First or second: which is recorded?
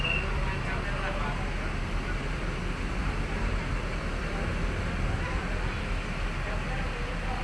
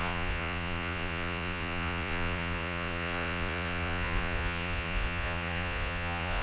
first